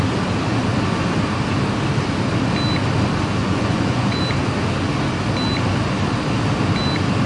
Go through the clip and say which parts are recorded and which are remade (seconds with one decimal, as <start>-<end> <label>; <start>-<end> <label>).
0.0-3.4 recorded; 3.4-4.2 remade; 4.2-7.3 recorded